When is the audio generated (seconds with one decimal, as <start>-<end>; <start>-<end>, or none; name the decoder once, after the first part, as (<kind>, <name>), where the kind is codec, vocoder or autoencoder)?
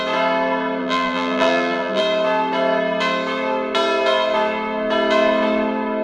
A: 0.8-2.0 (vocoder, BigVGAN v2)